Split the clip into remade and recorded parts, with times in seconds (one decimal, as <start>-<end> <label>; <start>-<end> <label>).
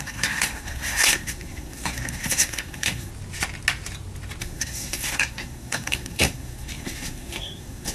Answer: 0.0-3.1 remade; 3.1-4.4 recorded; 4.4-7.9 remade